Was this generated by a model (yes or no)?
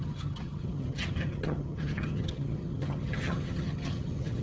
yes